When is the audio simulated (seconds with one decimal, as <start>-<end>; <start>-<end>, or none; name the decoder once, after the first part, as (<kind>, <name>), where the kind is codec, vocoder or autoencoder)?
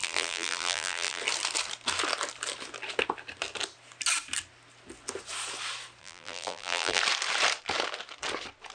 0.0-1.2 (vocoder, BigVGAN v2); 6.0-7.0